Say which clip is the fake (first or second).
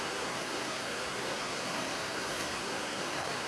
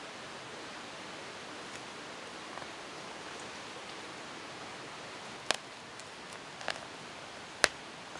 first